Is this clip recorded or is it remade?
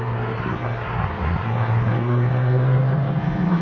remade